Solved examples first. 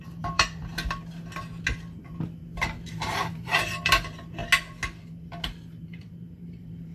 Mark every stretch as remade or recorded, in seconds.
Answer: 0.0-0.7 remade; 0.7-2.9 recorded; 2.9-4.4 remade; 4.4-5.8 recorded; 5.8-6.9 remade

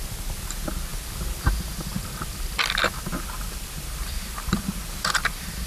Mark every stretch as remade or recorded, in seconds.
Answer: 0.0-1.9 recorded; 1.9-2.5 remade; 2.5-3.1 recorded; 3.1-5.7 remade

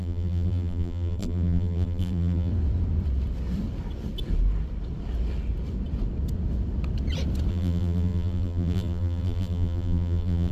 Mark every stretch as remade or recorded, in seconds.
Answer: 0.0-2.5 remade; 2.5-7.5 recorded; 7.5-10.5 remade

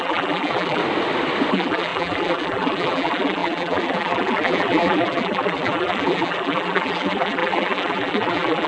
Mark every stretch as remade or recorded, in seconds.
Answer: 0.0-0.8 remade; 0.8-1.5 recorded; 1.5-8.7 remade

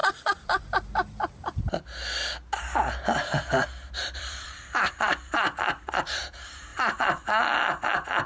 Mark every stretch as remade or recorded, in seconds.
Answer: 0.0-0.6 remade; 0.6-4.0 recorded; 4.0-6.2 remade; 6.2-6.7 recorded; 6.7-7.6 remade; 7.6-8.3 recorded

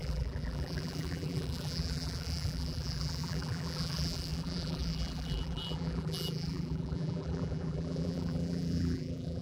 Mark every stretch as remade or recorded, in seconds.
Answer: 0.0-9.4 remade

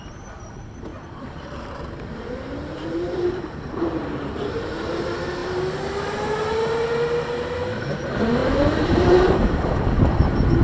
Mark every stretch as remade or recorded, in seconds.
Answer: 0.0-0.9 recorded; 0.9-4.9 remade; 4.9-8.4 recorded; 8.4-9.8 remade; 9.8-10.6 recorded